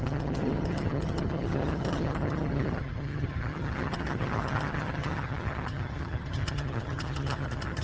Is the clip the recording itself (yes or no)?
no